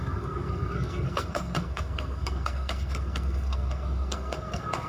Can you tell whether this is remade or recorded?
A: remade